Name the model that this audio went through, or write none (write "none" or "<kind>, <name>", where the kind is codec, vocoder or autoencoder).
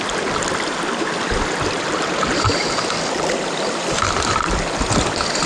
vocoder, BigVGAN v2